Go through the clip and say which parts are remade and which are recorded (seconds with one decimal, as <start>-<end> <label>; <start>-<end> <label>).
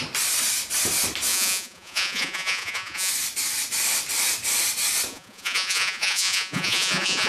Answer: 0.0-1.3 recorded; 1.3-3.1 remade; 3.1-5.1 recorded; 5.1-7.3 remade